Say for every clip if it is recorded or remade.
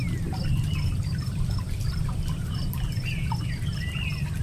recorded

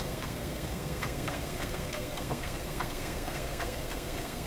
remade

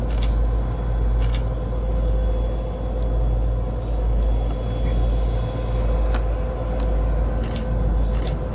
recorded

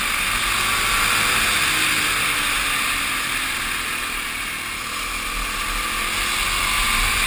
recorded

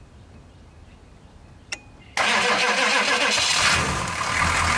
recorded